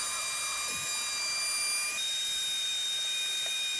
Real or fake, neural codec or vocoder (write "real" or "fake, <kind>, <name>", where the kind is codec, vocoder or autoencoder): real